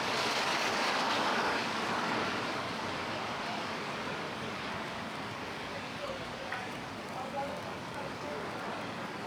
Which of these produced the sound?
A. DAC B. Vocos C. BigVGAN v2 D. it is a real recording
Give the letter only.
A